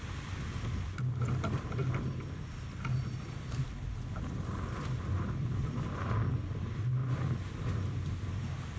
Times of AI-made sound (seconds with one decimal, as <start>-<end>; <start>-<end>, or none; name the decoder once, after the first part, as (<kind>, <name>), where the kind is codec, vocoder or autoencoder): none